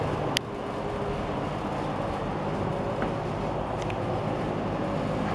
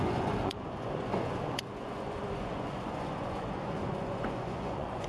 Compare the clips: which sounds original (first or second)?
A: first